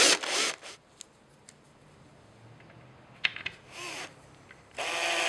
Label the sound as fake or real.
real